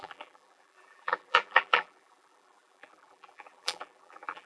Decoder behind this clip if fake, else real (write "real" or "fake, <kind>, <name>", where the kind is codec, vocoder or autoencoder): fake, vocoder, BigVGAN v2